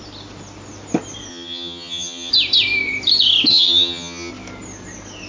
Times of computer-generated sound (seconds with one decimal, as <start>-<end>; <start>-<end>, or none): 1.3-2.3; 3.5-4.3